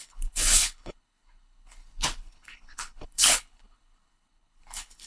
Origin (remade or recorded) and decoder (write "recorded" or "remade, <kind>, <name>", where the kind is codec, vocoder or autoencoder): remade, codec, HILCodec